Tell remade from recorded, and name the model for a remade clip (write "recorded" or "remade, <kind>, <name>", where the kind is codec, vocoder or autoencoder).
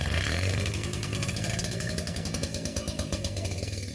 remade, codec, SNAC